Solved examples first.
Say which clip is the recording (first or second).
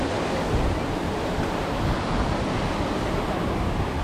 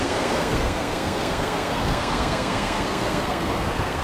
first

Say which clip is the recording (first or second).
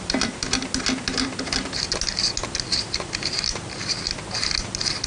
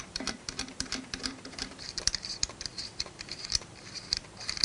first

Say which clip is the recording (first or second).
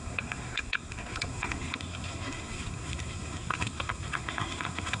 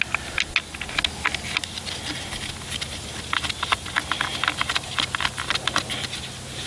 second